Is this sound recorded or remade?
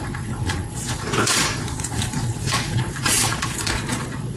remade